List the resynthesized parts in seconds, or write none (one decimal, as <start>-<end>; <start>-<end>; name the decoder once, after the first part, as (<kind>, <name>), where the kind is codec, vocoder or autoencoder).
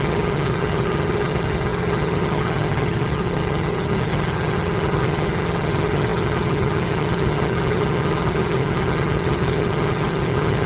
0.0-10.7 (vocoder, HiFi-GAN)